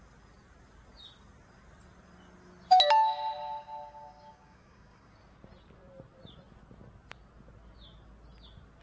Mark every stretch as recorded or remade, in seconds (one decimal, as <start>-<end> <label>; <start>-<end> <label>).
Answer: 0.0-3.4 recorded; 3.4-5.1 remade; 5.1-8.8 recorded